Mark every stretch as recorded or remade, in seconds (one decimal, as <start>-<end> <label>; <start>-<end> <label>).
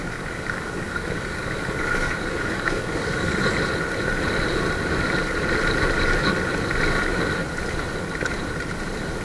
0.0-3.3 remade; 3.3-9.2 recorded